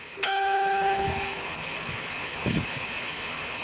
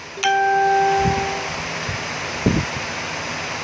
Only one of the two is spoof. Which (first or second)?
first